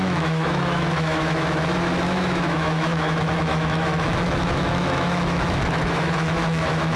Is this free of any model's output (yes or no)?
no